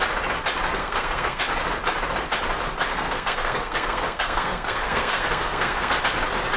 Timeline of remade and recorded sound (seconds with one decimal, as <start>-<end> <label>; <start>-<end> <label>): 0.0-0.8 recorded; 0.8-1.4 remade; 1.4-2.9 recorded; 2.9-5.9 remade; 5.9-6.6 recorded